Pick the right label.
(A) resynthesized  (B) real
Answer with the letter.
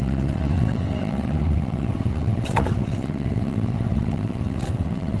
A